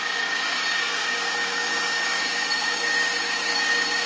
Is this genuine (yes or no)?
no